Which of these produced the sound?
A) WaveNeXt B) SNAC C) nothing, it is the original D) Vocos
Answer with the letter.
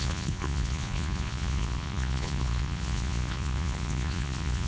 D